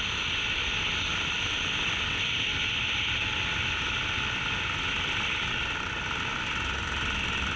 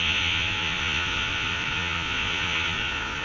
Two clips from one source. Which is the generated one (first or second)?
second